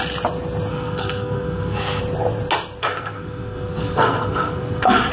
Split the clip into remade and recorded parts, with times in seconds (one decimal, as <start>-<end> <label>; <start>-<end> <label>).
0.0-0.7 recorded; 0.7-2.0 remade; 2.0-2.8 recorded; 2.8-5.1 remade